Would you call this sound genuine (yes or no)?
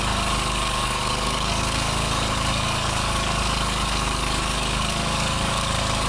no